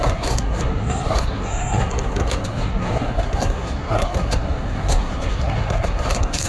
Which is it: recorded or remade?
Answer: remade